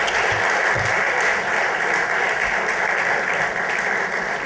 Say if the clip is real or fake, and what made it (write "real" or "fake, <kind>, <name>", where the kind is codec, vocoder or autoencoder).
real